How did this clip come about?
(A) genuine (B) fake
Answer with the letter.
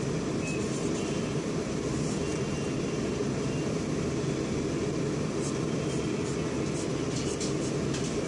A